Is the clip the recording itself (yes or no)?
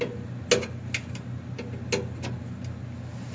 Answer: yes